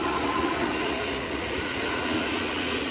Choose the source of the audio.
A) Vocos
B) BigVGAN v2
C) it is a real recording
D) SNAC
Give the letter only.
A